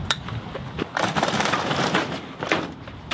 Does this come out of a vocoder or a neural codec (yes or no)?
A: yes